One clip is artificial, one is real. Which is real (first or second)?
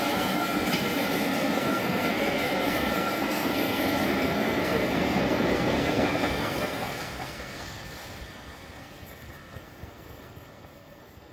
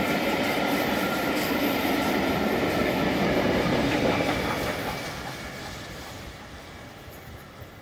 second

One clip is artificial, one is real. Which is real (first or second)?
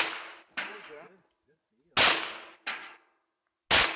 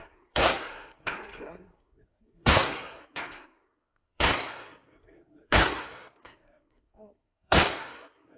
first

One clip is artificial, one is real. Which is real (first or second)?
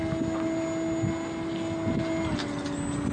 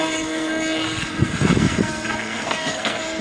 first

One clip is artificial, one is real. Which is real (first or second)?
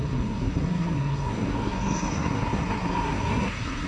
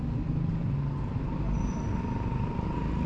second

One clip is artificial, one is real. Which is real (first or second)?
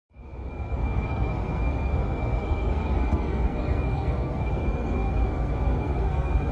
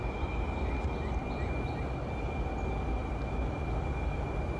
second